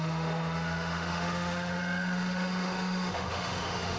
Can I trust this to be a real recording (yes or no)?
no